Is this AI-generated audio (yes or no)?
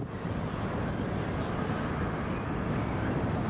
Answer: no